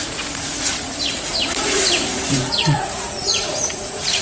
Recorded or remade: remade